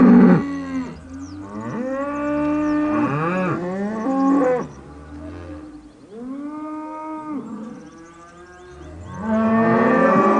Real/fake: real